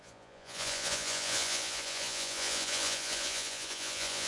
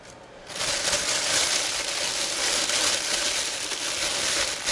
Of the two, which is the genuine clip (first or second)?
second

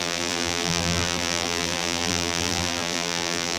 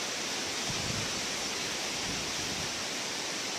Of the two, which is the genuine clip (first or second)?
second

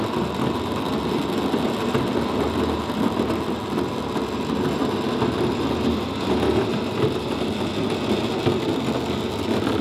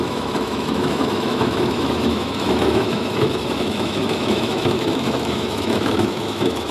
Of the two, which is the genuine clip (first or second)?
first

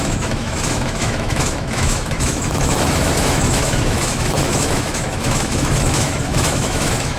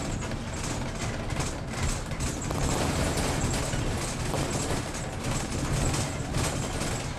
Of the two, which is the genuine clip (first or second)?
second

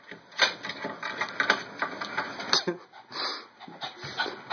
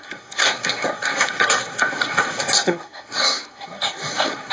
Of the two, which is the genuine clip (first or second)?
first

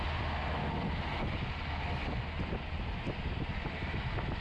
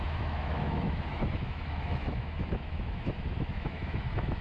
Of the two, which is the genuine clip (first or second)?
first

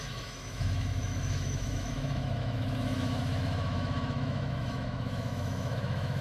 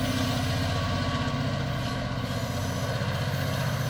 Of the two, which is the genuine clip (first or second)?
second